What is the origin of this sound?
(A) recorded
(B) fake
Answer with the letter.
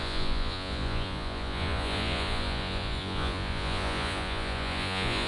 B